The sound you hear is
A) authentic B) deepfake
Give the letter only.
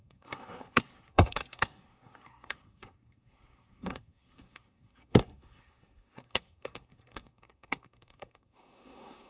B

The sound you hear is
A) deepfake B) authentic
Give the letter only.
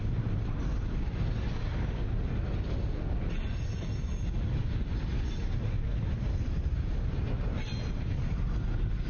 B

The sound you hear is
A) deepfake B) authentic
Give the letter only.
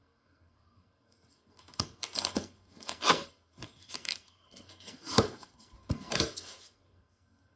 A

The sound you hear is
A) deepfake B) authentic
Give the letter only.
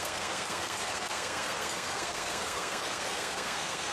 A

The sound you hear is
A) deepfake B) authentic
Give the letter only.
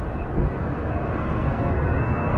A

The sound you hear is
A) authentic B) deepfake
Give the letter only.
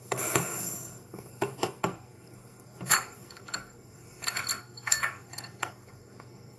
B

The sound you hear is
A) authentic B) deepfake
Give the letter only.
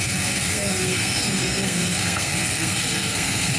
B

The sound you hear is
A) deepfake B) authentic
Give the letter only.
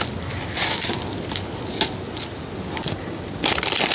B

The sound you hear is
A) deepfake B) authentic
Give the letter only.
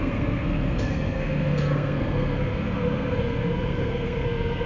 A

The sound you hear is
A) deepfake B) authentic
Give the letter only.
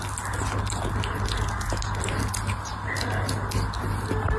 B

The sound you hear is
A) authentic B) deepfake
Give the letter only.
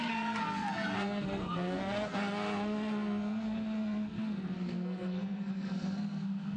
B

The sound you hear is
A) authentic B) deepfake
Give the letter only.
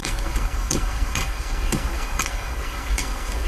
B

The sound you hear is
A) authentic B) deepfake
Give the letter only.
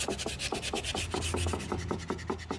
A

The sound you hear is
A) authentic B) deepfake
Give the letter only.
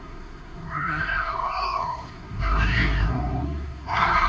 B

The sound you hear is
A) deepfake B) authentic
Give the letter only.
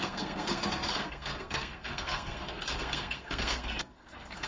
A